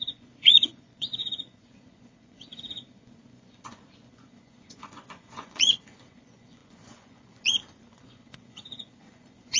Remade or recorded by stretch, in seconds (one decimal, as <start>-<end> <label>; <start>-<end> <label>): 0.0-9.6 remade